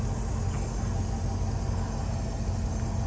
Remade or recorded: recorded